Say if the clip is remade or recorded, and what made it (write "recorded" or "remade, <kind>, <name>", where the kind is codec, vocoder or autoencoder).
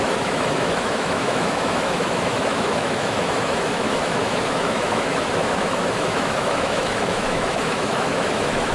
remade, autoencoder, DAC-VAE